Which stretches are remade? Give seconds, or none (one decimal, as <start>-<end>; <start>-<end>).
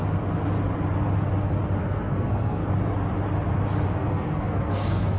1.8-2.6; 3.9-5.2